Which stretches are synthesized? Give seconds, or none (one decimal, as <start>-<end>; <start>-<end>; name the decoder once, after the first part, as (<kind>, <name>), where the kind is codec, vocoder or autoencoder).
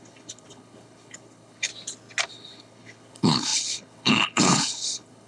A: 0.0-1.7 (codec, HILCodec); 2.3-5.3